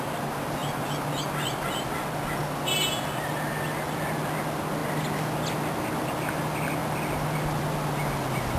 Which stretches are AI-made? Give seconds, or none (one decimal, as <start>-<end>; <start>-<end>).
none